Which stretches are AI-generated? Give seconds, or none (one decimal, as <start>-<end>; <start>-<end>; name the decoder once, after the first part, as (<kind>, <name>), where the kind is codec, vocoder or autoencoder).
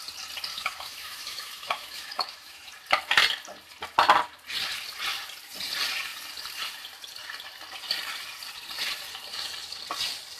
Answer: 0.5-2.7 (autoencoder, DAC-VAE)